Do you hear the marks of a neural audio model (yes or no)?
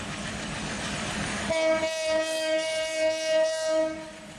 yes